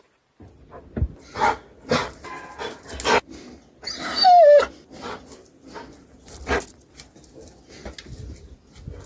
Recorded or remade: recorded